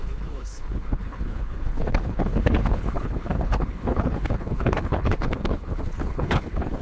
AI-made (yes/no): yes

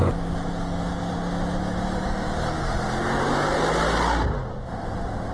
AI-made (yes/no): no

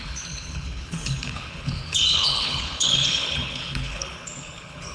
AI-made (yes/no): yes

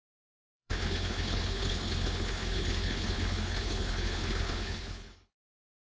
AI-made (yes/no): yes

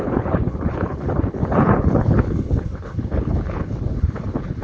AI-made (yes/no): yes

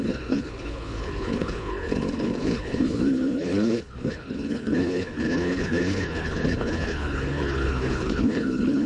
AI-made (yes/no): yes